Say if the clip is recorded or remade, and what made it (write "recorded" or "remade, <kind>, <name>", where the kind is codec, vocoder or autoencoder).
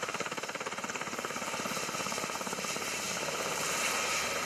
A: remade, vocoder, BigVGAN v2